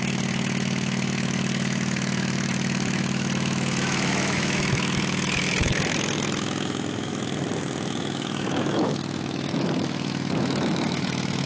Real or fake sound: fake